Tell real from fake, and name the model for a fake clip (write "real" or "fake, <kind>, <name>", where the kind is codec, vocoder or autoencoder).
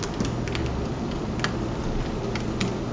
real